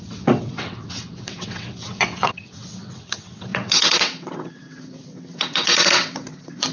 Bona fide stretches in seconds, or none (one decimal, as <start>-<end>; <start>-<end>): none